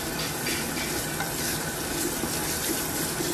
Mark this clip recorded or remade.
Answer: remade